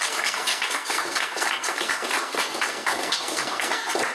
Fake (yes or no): yes